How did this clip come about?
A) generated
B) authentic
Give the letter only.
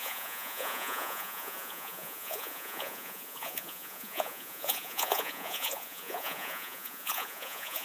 A